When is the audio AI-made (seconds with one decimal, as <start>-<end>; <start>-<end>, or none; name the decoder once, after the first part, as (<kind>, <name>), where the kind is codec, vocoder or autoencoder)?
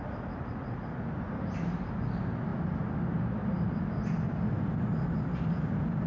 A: none